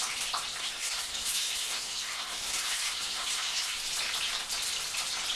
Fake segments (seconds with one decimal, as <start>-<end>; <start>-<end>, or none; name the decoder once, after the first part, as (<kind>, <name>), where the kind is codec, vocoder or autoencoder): 0.6-3.8 (codec, SNAC)